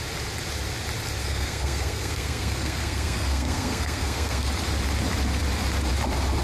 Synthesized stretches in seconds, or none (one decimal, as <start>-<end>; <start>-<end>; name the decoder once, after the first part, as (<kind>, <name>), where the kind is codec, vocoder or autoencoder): 1.2-4.5 (codec, SNAC)